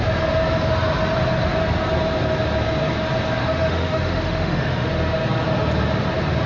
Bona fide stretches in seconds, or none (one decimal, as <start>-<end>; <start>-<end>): 0.0-3.4; 4.9-6.5